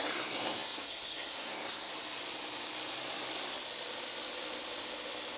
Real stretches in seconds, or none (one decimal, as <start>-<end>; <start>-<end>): 1.9-5.4